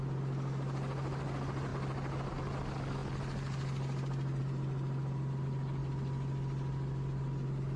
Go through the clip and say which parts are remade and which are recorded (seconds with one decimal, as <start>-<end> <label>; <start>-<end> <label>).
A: 0.0-7.8 recorded